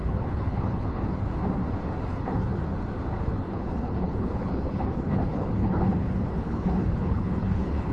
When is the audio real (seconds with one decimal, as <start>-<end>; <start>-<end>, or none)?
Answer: 1.4-2.1; 2.5-3.2